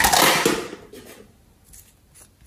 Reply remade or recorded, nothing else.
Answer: recorded